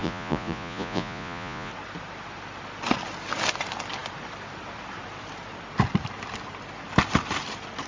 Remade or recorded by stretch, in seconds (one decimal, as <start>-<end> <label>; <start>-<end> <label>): 0.0-1.7 remade; 1.7-7.9 recorded